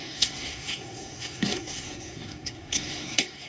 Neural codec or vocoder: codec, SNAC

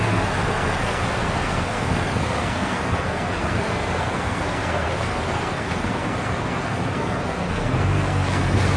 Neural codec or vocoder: codec, SNAC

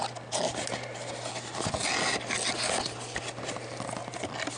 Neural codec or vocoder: none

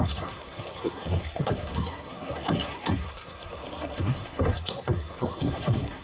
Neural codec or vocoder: codec, SNAC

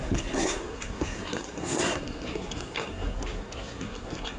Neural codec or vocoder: codec, SNAC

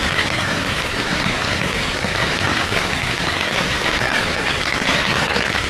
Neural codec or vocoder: codec, SNAC